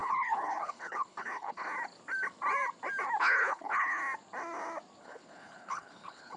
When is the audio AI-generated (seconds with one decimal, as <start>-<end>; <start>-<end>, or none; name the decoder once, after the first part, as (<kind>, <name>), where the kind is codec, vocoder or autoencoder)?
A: 0.0-1.7 (codec, HILCodec); 3.2-4.0; 5.0-6.4